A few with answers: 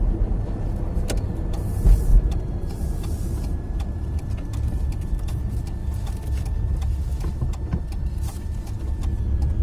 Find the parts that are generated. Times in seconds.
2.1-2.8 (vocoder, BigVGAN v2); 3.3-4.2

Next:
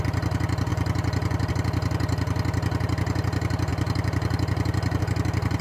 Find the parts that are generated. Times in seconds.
0.7-1.5 (vocoder, BigVGAN v2); 3.7-5.0

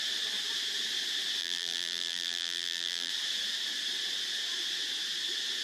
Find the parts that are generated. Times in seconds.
1.4-3.1 (vocoder, BigVGAN v2)

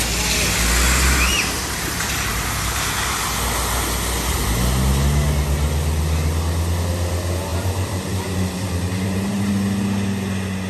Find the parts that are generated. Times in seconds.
1.3-3.2 (vocoder, BigVGAN v2); 7.5-9.5

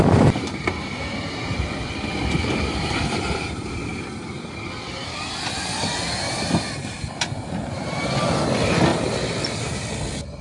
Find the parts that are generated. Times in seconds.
0.0-8.9 (vocoder, BigVGAN v2); 9.4-10.4

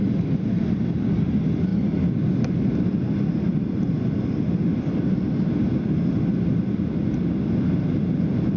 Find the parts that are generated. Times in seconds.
none

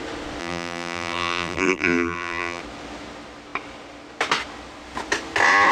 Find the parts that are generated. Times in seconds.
0.4-2.6 (vocoder, BigVGAN v2)